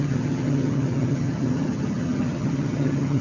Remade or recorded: remade